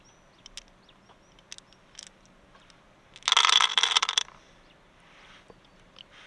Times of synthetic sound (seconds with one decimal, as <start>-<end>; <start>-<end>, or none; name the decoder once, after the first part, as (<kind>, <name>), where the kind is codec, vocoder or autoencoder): 3.7-5.4 (vocoder, BigVGAN v2)